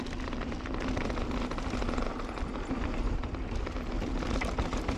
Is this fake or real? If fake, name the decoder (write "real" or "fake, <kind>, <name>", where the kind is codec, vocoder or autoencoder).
real